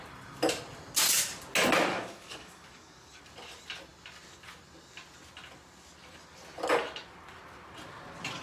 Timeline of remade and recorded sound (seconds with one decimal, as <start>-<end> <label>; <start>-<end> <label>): 0.0-1.9 recorded; 1.9-3.2 remade; 3.2-8.4 recorded